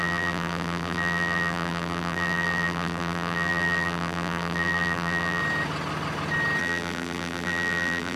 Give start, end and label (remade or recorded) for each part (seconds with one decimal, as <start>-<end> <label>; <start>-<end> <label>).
0.0-5.4 remade; 5.4-6.6 recorded; 6.6-8.2 remade